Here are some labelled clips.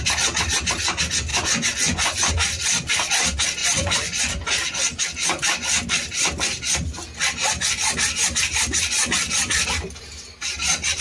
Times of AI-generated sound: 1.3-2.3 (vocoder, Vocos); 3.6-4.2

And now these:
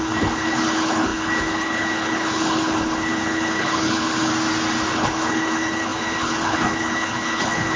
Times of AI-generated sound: 0.0-4.3 (codec, HILCodec); 4.9-7.8